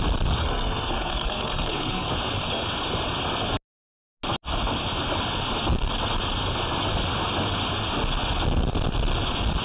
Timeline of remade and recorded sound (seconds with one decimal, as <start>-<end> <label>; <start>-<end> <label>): 0.0-0.4 recorded; 0.4-2.1 remade; 2.1-9.6 recorded